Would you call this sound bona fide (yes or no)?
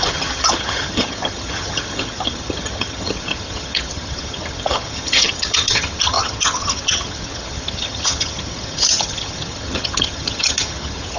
no